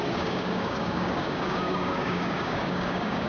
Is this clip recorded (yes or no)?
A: no